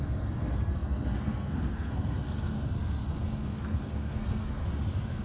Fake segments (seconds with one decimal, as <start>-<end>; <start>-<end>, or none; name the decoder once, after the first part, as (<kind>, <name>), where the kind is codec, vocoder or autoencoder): 0.0-4.6 (codec, SNAC)